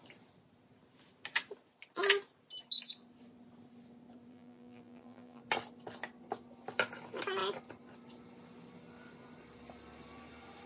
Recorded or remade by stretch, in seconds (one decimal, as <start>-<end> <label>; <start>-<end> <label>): 0.0-4.3 recorded; 4.3-5.4 remade; 5.4-10.7 recorded